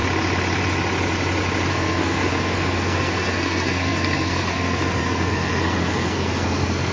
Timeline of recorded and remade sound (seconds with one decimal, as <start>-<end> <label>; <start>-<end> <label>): 0.0-1.7 recorded; 1.7-6.9 remade